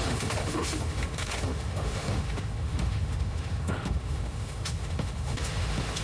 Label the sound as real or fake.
fake